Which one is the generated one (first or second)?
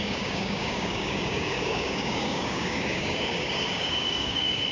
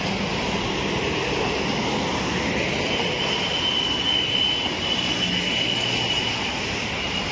first